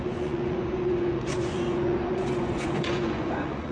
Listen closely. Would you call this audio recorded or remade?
remade